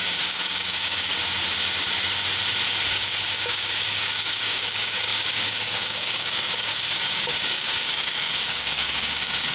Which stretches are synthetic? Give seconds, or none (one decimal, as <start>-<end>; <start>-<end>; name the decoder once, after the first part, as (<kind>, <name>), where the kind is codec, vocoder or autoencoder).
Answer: 0.0-1.1 (codec, DAC); 2.9-9.5